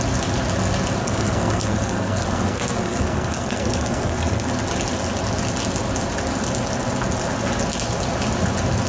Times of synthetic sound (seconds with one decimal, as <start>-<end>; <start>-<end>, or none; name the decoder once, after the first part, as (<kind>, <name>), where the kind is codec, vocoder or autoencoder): 1.0-4.5 (codec, SNAC)